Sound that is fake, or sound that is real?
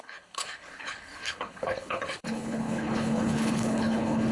fake